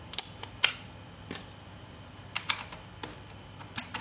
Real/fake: real